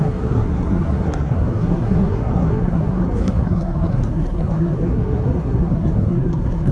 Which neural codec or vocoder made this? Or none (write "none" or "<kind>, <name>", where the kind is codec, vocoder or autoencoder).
codec, SNAC